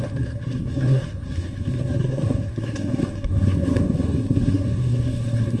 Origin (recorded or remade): remade